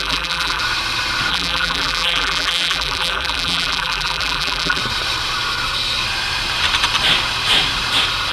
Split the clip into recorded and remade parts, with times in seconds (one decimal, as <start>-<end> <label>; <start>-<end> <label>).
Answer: 0.0-0.6 remade; 0.6-1.3 recorded; 1.3-4.8 remade; 4.8-8.3 recorded